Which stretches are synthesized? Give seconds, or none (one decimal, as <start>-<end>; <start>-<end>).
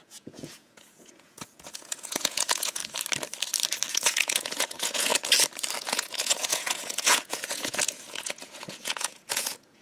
0.0-2.8; 3.9-5.1; 5.8-9.8